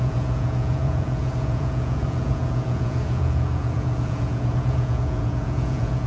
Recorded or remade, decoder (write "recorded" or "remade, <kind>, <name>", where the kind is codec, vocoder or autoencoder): remade, vocoder, Vocos